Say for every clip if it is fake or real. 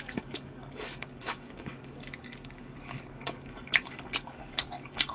fake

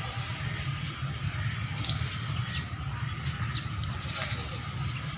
real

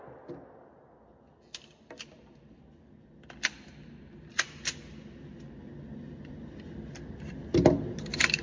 real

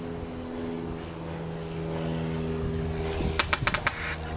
real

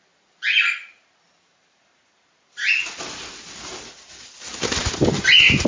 real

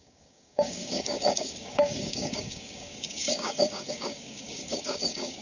fake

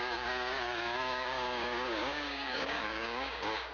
fake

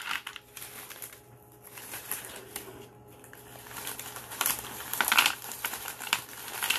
real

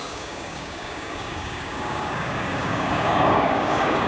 fake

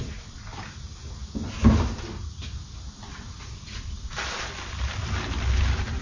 real